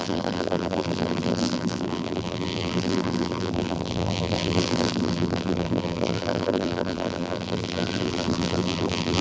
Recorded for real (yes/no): no